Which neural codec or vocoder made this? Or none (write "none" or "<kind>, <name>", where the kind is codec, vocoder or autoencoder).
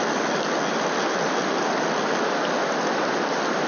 none